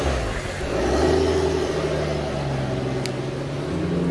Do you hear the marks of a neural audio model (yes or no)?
no